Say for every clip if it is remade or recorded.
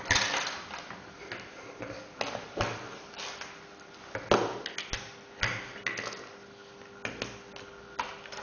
recorded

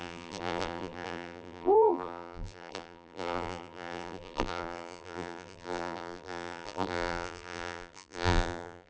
remade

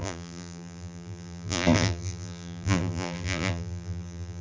remade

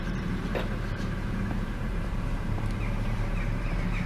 remade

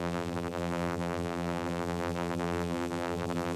remade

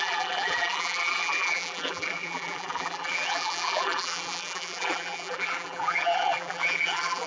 remade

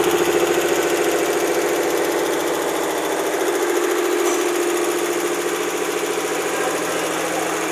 recorded